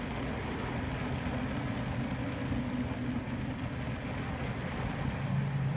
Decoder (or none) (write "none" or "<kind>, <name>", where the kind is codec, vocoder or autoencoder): none